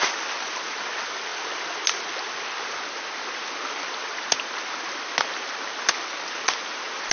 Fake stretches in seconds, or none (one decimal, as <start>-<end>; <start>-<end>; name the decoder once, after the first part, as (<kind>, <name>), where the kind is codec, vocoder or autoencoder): none